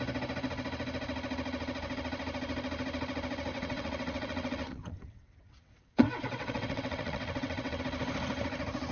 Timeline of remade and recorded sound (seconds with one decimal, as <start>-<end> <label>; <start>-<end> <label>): 0.0-3.5 recorded; 3.5-7.8 remade; 7.8-8.9 recorded